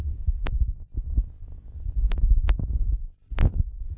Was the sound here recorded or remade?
recorded